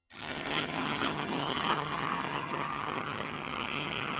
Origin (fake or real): fake